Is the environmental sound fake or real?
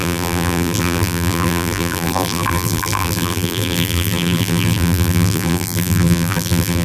fake